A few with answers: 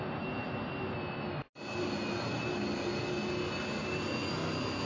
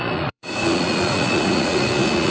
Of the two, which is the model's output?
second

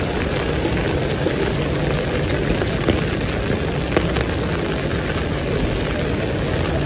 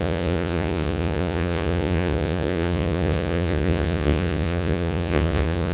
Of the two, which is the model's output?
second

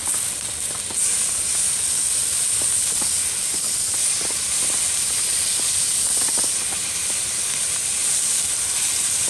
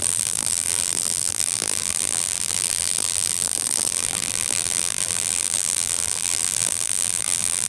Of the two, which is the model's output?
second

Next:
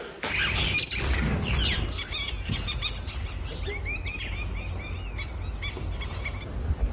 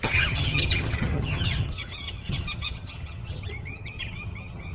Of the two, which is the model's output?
second